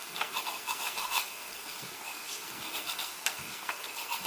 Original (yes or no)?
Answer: no